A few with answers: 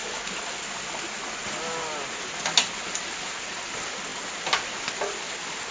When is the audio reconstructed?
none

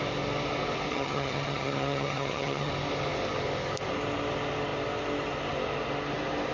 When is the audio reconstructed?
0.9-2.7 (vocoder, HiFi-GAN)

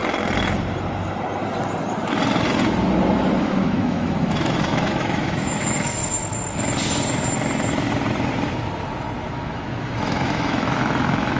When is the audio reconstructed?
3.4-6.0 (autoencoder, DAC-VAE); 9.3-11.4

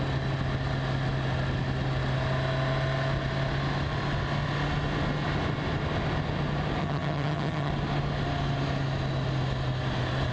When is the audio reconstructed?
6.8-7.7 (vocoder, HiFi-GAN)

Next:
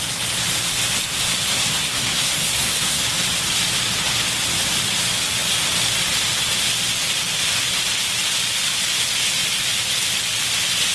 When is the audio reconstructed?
1.5-3.0 (codec, SNAC)

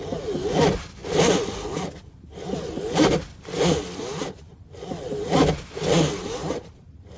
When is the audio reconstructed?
6.4-7.2 (vocoder, BigVGAN v2)